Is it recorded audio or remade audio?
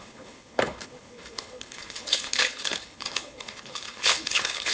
remade